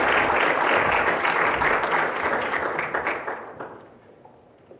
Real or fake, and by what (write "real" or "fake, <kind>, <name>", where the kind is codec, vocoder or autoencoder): real